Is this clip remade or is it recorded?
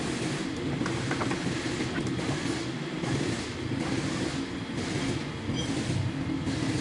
recorded